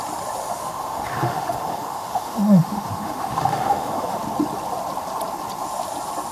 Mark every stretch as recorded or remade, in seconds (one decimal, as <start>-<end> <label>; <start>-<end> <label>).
0.0-0.4 recorded; 0.4-4.2 remade; 4.2-6.3 recorded